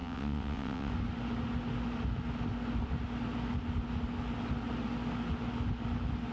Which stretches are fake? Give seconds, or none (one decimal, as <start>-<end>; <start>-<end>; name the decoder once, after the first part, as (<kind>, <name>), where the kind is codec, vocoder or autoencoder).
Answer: 0.0-0.9 (vocoder, WaveNeXt)